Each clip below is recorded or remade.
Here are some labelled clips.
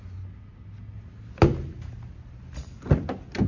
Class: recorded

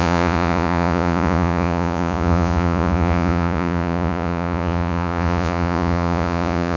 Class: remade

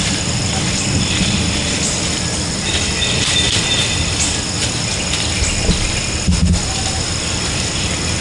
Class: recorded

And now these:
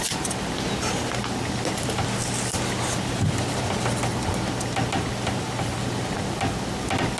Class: recorded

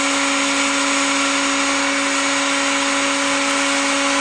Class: recorded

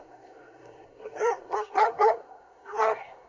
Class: remade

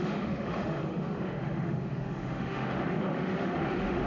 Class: remade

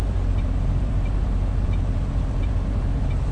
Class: remade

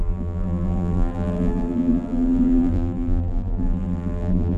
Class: remade